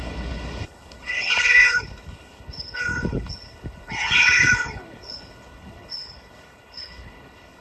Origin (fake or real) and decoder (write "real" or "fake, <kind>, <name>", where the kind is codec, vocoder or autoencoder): fake, codec, HILCodec